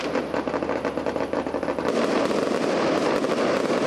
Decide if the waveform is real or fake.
real